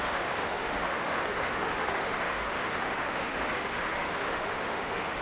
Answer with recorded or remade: remade